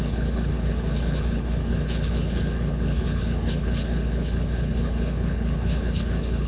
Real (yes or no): no